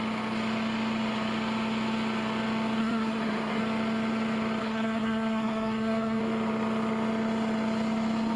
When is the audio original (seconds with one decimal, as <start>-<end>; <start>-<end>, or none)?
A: 0.0-2.8; 3.6-4.6; 6.2-8.4